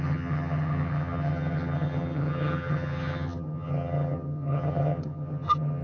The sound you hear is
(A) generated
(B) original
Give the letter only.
A